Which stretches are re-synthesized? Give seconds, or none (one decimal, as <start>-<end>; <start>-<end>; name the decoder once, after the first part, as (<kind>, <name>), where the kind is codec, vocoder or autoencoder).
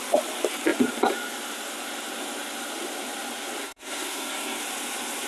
3.6-4.6 (codec, SNAC)